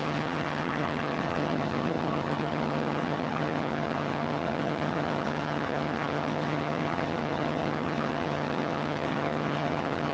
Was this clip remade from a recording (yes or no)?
yes